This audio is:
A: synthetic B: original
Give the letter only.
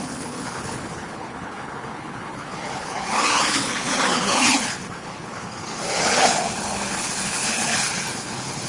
A